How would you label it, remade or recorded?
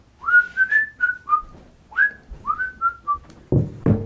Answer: recorded